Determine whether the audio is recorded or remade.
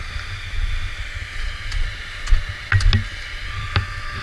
recorded